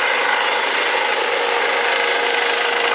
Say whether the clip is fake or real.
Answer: real